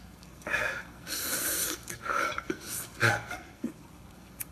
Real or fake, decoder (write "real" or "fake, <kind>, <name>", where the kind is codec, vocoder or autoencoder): fake, codec, SNAC